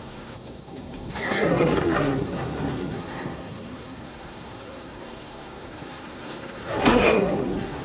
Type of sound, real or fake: fake